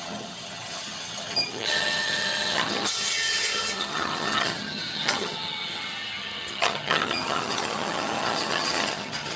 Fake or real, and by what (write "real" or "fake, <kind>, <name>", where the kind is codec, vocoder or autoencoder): fake, vocoder, HiFi-GAN